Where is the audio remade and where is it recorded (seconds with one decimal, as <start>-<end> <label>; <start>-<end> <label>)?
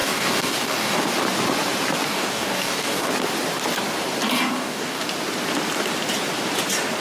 0.0-1.0 remade; 1.0-2.1 recorded; 2.1-3.1 remade; 3.1-4.4 recorded; 4.4-5.0 remade; 5.0-7.0 recorded